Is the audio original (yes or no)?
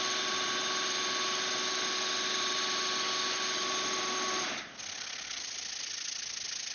yes